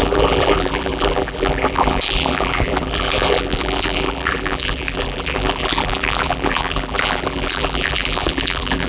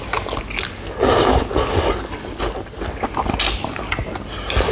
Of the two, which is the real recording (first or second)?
second